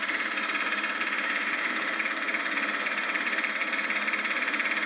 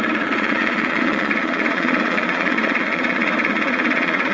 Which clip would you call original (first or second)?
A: first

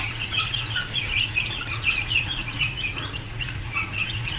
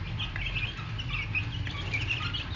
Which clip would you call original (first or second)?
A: second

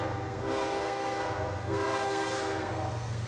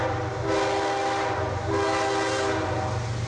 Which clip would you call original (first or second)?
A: second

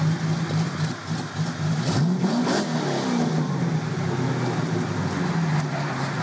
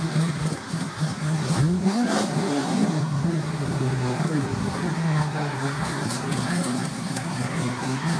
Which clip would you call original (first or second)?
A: first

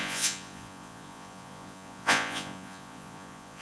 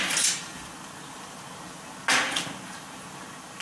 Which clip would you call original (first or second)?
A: second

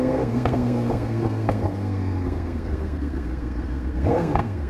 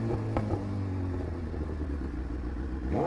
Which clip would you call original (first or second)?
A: second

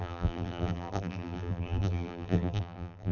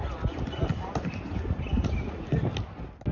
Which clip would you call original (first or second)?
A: second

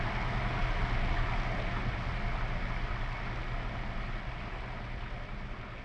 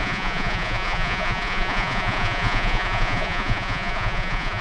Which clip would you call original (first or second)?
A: first